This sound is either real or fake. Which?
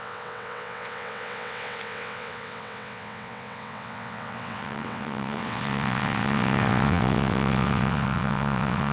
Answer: fake